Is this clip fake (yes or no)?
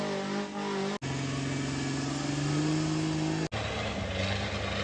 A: no